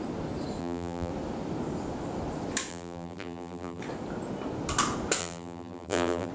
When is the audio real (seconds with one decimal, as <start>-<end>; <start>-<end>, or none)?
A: 0.0-0.6; 1.1-2.7; 3.8-5.2